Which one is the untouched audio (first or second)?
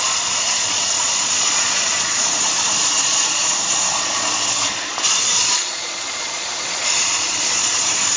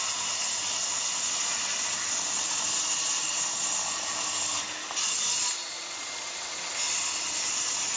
second